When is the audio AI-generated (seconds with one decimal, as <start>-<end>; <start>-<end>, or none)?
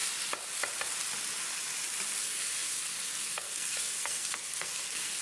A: 2.2-5.2